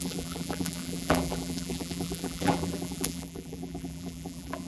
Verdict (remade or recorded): remade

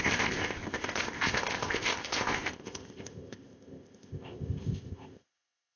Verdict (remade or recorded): remade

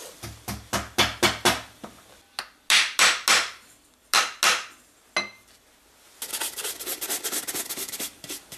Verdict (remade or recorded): recorded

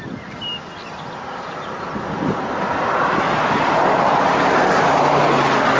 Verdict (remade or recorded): recorded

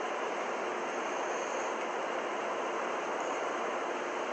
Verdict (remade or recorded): recorded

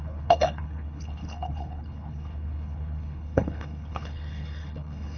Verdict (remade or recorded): remade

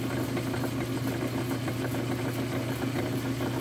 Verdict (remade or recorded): recorded